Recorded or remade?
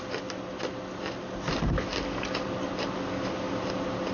recorded